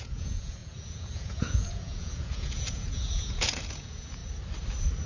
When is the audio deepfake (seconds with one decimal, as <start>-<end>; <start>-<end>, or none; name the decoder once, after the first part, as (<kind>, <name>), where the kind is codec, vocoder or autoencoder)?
0.0-4.2 (vocoder, Vocos)